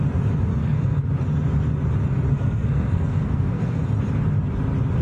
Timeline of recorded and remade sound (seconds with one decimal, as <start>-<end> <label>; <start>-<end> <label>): 0.0-0.6 recorded; 0.6-1.1 remade; 1.1-2.3 recorded; 2.3-3.8 remade; 3.8-5.0 recorded